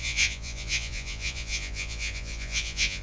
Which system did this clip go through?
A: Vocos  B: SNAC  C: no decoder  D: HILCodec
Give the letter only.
A